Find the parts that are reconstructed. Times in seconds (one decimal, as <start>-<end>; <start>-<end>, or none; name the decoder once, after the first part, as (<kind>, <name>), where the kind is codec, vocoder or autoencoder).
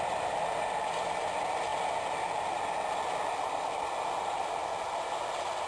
none